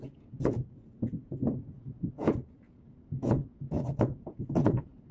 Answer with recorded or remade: remade